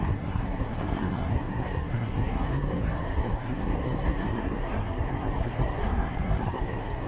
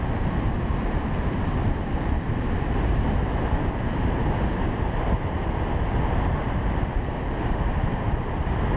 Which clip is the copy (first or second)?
first